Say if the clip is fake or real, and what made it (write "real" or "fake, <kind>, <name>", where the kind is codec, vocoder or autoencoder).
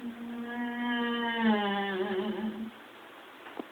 real